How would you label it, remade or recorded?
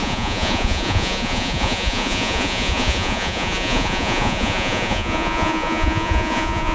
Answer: remade